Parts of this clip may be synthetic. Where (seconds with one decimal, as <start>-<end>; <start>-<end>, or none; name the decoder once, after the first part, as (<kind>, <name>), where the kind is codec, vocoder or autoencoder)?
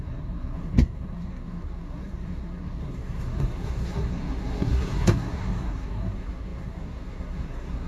0.0-7.9 (codec, SNAC)